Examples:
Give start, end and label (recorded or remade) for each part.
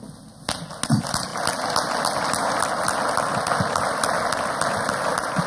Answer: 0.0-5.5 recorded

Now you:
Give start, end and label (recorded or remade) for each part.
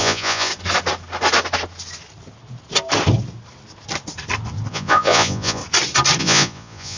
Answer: 0.0-0.5 remade; 0.5-4.7 recorded; 4.7-5.6 remade; 5.6-6.2 recorded; 6.2-7.0 remade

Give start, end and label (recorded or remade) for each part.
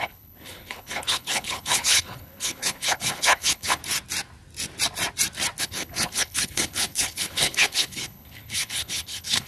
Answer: 0.0-3.8 remade; 3.8-5.6 recorded; 5.6-9.5 remade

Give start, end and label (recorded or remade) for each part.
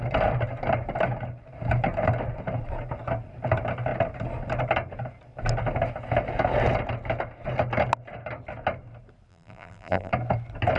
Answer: 0.0-9.3 recorded; 9.3-10.1 remade; 10.1-10.8 recorded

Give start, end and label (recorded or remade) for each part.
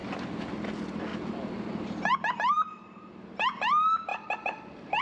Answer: 0.0-0.7 remade; 0.7-5.0 recorded